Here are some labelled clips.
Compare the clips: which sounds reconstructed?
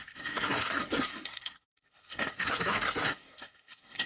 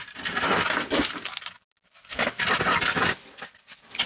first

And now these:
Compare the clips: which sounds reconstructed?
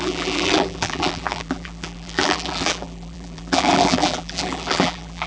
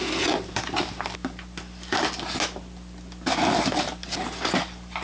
first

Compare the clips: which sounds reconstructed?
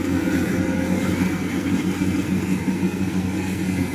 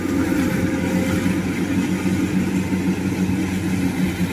first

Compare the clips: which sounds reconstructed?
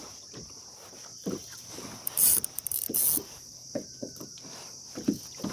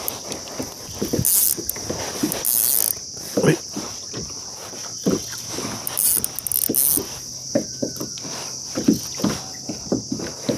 first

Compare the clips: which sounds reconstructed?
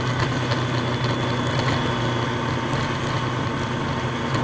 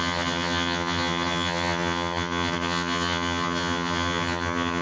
second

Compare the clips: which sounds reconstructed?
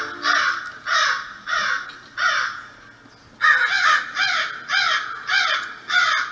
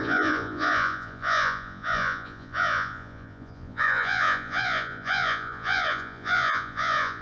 second